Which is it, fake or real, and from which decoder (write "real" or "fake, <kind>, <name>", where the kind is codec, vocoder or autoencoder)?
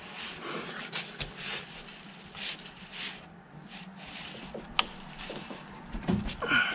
real